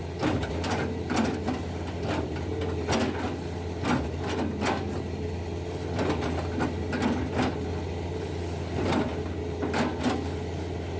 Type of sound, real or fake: real